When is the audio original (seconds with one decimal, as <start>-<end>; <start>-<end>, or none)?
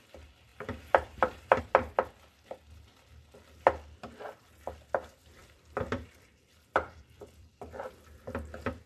0.0-0.5; 1.6-5.4; 7.5-8.9